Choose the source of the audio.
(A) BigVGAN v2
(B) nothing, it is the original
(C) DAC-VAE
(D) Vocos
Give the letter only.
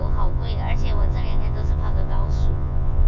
D